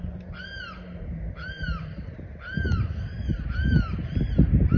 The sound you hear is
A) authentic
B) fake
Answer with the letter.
A